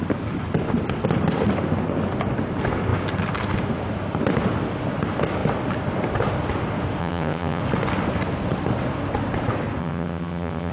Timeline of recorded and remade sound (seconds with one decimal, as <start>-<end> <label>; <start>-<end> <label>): 0.0-7.0 recorded; 7.0-7.6 remade; 7.6-9.8 recorded; 9.8-10.7 remade